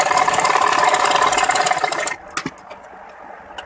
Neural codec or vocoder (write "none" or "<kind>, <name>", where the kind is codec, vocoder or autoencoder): none